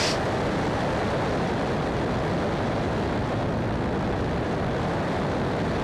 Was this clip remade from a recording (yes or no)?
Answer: no